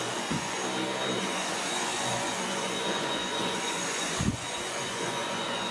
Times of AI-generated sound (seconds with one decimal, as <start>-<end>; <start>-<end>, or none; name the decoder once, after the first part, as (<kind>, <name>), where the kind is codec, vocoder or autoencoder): 0.0-0.6 (vocoder, Vocos); 1.2-5.7